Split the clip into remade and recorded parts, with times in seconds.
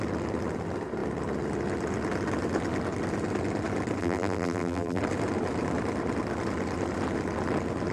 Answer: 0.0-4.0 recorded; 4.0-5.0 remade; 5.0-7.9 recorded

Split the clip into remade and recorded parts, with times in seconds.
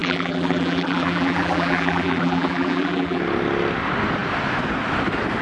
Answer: 0.0-3.2 remade; 3.2-5.4 recorded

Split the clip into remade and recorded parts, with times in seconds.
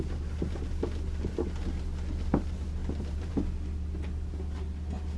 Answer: 0.0-2.8 recorded; 2.8-3.3 remade; 3.3-5.2 recorded